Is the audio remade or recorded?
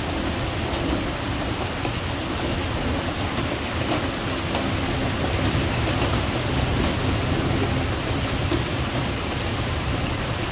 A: recorded